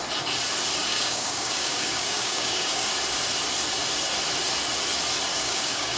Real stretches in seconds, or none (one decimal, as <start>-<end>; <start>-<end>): 0.0-0.9; 2.9-5.3